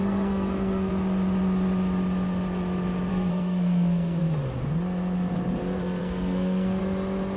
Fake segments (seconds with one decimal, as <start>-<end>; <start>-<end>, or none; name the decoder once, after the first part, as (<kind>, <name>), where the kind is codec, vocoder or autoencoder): 0.0-0.9 (codec, SNAC); 3.1-4.2; 6.0-6.8